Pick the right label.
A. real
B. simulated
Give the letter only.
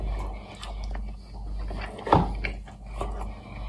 A